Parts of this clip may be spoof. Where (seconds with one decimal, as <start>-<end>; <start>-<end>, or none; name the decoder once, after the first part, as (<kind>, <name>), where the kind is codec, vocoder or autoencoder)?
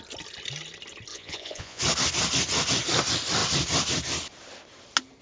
1.1-1.8 (vocoder, Vocos)